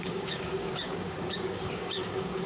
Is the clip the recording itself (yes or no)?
no